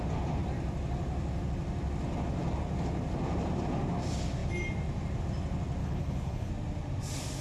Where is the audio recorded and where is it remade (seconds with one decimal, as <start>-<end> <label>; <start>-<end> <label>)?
0.0-5.8 recorded; 5.8-6.5 remade; 6.5-7.4 recorded

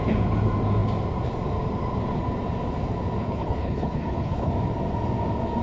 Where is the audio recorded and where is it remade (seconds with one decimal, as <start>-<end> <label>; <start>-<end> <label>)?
0.0-3.2 recorded; 3.2-4.5 remade; 4.5-5.6 recorded

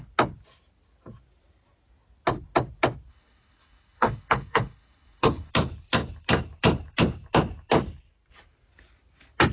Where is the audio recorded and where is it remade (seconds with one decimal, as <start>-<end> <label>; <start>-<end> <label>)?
0.0-3.1 recorded; 3.1-5.5 remade; 5.5-9.5 recorded

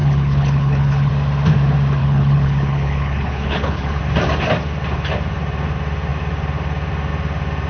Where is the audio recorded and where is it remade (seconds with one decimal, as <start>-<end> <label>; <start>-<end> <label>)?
0.0-1.1 remade; 1.1-2.0 recorded; 2.0-4.0 remade; 4.0-7.7 recorded

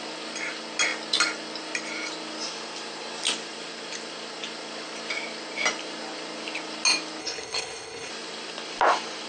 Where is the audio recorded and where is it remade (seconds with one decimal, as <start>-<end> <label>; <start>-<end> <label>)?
0.0-7.2 recorded; 7.2-8.1 remade; 8.1-9.3 recorded

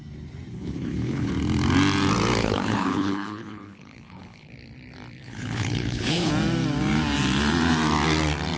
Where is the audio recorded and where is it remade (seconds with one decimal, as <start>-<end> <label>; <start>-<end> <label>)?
0.0-0.5 recorded; 0.5-1.3 remade; 1.3-2.4 recorded; 2.4-4.5 remade; 4.5-5.2 recorded; 5.2-6.3 remade; 6.3-8.6 recorded

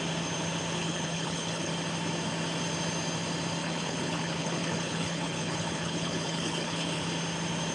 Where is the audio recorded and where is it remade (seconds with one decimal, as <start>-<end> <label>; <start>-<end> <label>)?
0.0-0.8 recorded; 0.8-1.7 remade; 1.7-3.6 recorded; 3.6-7.0 remade; 7.0-7.7 recorded

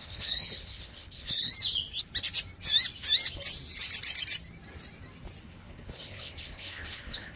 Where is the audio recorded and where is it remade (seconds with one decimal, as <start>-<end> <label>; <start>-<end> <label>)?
0.0-1.5 remade; 1.5-5.4 recorded; 5.4-7.4 remade